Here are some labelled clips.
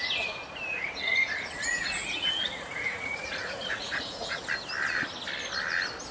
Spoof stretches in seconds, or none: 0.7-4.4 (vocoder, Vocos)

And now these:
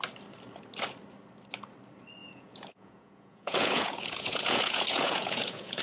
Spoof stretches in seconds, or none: 2.2-5.8 (vocoder, Vocos)

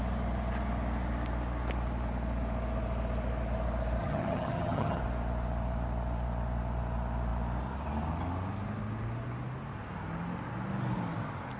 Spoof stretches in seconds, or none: 4.0-5.0 (vocoder, HiFi-GAN)

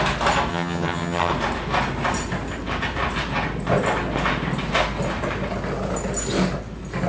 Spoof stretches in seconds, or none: 0.5-1.3 (vocoder, HiFi-GAN)